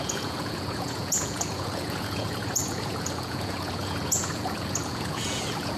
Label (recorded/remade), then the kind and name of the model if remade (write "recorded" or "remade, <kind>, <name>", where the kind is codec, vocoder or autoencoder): remade, vocoder, Vocos